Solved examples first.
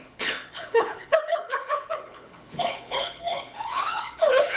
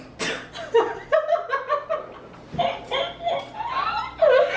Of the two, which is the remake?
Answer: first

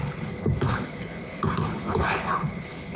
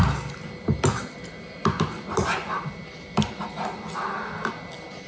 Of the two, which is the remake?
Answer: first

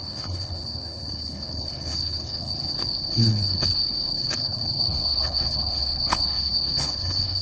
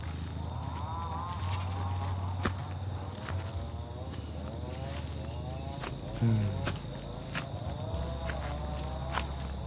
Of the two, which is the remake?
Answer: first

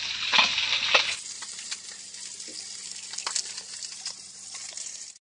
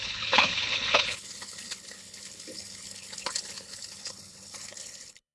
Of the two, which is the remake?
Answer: second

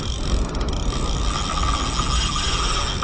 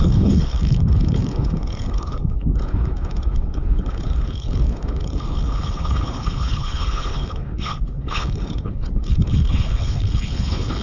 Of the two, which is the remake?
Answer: second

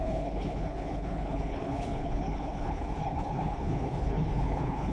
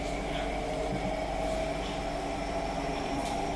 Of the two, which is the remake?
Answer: first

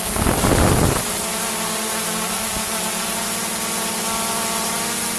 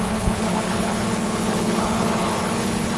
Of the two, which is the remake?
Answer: second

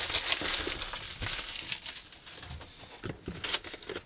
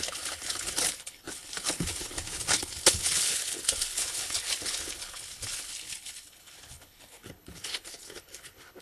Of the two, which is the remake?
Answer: second